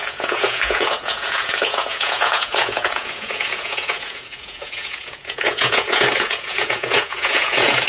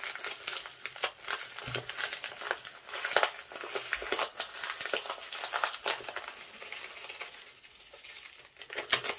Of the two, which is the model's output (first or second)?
first